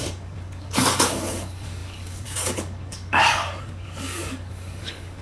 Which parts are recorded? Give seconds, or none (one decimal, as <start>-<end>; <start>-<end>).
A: none